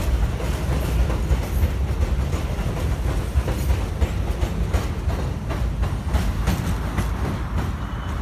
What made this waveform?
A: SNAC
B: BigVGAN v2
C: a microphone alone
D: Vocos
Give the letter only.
C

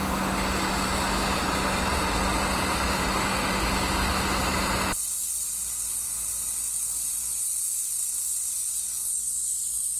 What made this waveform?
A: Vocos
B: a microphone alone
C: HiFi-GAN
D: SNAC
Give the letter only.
B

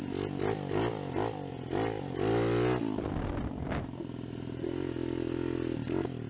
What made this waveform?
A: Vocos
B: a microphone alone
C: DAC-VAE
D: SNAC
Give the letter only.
B